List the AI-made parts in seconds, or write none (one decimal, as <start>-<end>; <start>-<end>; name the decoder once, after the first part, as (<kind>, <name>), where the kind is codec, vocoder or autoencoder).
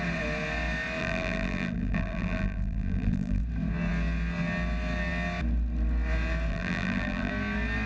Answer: 1.0-3.4 (vocoder, BigVGAN v2); 6.5-7.3